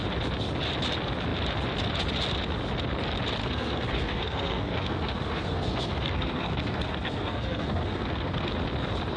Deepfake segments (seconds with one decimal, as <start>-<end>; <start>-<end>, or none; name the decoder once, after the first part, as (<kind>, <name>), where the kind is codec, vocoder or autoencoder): 3.4-8.5 (codec, SNAC)